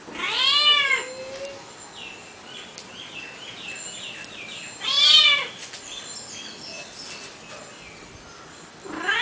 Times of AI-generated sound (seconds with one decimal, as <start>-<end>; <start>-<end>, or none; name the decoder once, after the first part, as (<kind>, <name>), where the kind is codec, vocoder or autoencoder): 2.2-5.5 (vocoder, BigVGAN v2)

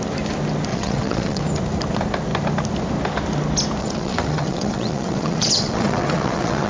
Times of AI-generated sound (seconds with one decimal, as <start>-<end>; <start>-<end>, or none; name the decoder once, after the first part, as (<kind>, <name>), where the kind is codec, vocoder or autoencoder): 0.7-1.4 (vocoder, WaveNeXt); 3.8-6.7

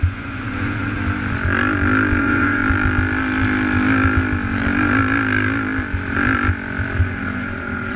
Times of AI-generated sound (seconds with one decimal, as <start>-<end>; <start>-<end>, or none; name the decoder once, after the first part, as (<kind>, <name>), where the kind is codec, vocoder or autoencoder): 0.0-1.0 (vocoder, Vocos); 2.2-2.6; 7.0-8.0

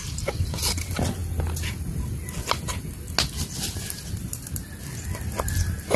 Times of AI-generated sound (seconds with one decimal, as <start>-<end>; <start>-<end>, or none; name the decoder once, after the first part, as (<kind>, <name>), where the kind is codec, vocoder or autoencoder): none

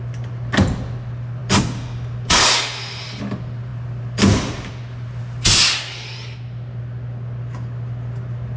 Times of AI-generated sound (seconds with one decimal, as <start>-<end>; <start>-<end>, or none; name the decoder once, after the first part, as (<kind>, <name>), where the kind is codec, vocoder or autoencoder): none